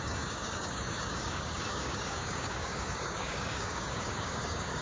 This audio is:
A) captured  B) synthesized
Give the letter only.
B